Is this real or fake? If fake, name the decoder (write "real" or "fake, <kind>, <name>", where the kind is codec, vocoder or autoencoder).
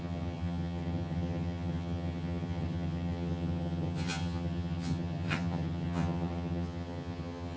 fake, vocoder, HiFi-GAN